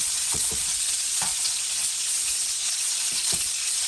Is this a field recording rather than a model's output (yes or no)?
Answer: no